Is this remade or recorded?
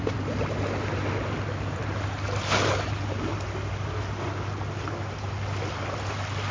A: recorded